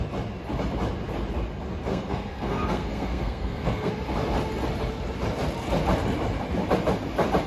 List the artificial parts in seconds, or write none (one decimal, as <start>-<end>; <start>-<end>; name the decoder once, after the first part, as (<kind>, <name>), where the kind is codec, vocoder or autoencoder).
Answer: 1.9-3.9 (codec, SNAC)